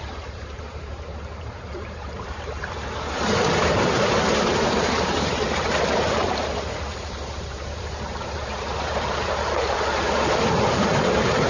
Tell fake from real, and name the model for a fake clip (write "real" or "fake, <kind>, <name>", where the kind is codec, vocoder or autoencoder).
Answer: fake, vocoder, BigVGAN v2